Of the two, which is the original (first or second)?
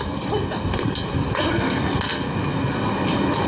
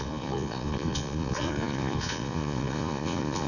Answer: first